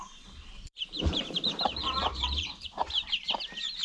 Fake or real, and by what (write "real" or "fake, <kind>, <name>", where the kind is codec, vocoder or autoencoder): fake, vocoder, BigVGAN v2